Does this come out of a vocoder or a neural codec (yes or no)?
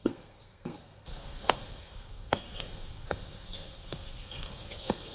yes